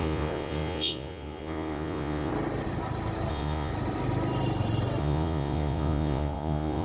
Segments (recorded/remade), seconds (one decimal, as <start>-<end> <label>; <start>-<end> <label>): 0.0-2.3 remade; 2.3-3.3 recorded; 3.3-3.7 remade; 3.7-5.0 recorded; 5.0-6.8 remade